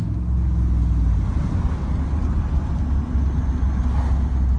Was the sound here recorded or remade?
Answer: recorded